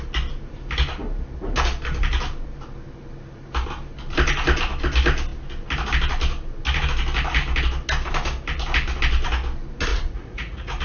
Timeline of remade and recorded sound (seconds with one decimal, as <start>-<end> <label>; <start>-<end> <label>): 0.0-9.9 recorded; 9.9-10.8 remade